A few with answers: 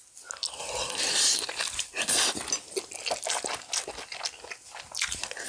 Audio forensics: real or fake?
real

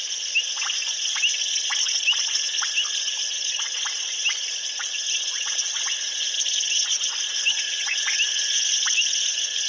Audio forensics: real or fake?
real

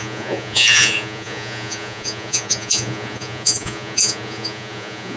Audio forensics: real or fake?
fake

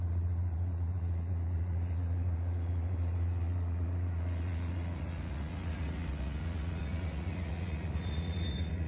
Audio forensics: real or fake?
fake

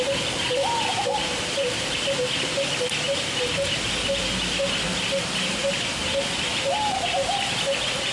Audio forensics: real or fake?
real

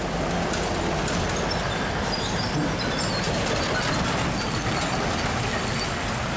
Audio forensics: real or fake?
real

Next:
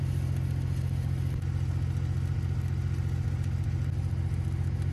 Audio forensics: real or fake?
real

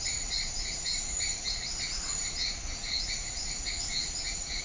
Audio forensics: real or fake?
fake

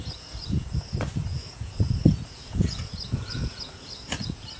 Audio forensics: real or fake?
fake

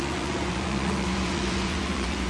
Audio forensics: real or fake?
fake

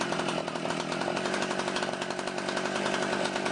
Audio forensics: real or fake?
real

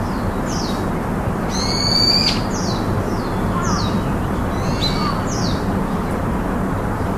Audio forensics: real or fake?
real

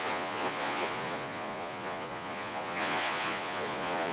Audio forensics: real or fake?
fake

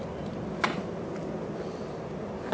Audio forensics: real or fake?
real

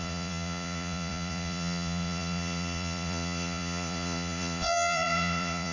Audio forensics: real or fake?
fake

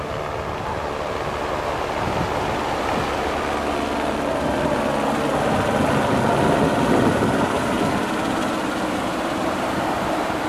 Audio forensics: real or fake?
real